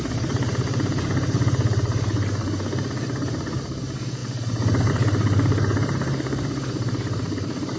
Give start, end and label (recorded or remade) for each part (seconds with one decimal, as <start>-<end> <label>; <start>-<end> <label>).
0.0-4.2 remade; 4.2-4.9 recorded; 4.9-7.8 remade